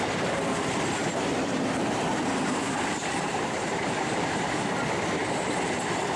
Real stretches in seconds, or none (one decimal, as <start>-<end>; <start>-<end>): 0.0-1.0; 4.7-5.2; 5.7-6.2